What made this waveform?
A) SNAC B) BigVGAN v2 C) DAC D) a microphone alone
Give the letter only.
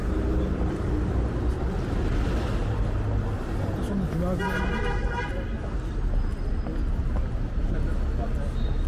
D